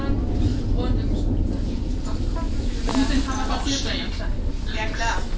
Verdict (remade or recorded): recorded